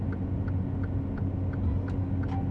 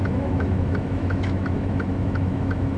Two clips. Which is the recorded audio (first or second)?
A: first